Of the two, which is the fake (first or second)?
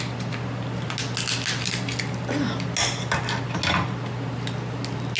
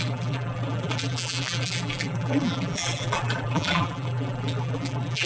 second